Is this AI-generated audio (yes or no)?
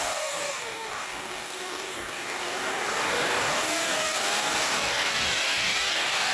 yes